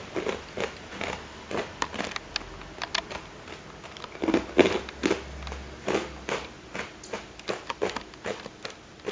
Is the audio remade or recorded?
recorded